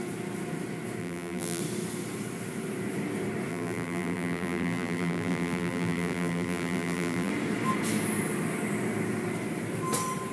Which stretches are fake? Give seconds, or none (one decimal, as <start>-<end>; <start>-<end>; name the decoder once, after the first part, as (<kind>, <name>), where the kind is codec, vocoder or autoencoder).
1.0-1.6 (vocoder, BigVGAN v2); 3.5-7.3